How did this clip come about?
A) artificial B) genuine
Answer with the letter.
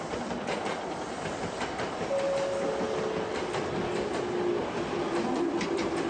B